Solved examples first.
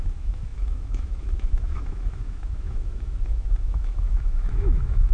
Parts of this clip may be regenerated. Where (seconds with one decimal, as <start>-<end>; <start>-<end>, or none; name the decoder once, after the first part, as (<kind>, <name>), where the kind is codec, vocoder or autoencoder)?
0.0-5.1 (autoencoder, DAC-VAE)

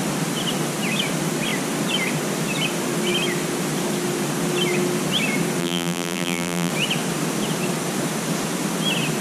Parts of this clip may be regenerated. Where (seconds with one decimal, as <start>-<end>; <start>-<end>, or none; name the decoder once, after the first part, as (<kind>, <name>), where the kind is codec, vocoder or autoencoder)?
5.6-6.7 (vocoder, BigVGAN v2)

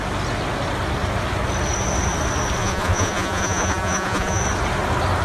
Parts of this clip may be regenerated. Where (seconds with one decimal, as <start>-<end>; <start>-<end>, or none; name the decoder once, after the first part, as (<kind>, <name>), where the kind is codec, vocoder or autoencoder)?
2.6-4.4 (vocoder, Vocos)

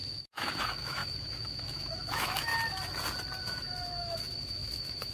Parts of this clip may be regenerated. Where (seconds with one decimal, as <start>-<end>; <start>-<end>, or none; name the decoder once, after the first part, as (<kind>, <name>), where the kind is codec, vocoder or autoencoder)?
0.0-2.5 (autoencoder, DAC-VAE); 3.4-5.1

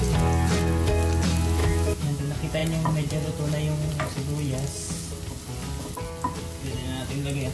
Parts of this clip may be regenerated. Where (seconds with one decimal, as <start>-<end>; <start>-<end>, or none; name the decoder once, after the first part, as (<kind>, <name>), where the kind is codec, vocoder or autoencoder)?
1.6-2.2 (autoencoder, DAC-VAE)

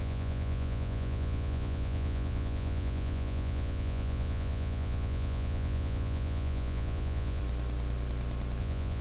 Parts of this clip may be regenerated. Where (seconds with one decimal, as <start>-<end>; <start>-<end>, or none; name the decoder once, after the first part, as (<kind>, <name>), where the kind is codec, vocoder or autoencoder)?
0.0-7.4 (vocoder, Vocos); 8.6-9.0

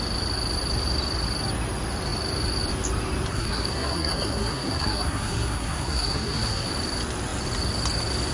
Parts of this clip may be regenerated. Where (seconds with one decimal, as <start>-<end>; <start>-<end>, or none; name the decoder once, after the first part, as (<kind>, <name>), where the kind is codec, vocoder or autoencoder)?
3.3-6.7 (codec, SNAC)